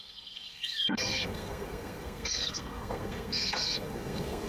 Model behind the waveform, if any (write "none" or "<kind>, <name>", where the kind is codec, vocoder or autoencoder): codec, SNAC